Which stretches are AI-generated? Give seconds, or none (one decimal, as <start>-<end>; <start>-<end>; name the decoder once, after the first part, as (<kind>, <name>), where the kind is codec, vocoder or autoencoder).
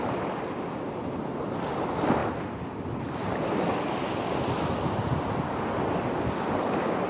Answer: none